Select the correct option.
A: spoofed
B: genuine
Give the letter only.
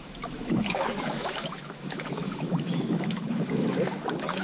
A